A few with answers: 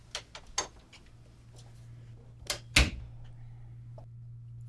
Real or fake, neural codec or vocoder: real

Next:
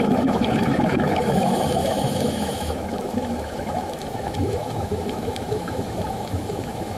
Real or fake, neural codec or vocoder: fake, autoencoder, DAC-VAE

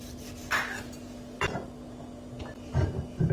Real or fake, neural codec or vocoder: real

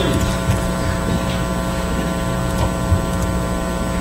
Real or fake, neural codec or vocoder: real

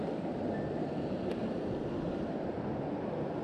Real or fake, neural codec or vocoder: real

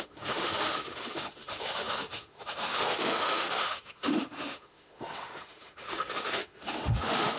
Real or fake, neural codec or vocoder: fake, autoencoder, DAC-VAE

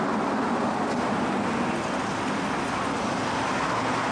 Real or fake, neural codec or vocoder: real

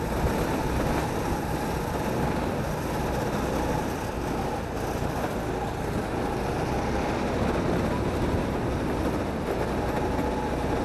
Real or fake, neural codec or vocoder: real